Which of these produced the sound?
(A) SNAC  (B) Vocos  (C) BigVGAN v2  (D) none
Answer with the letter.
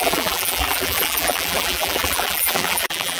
C